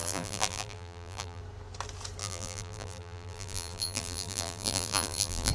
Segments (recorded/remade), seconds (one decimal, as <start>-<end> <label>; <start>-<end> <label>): 0.0-1.4 remade; 1.4-2.2 recorded; 2.2-5.5 remade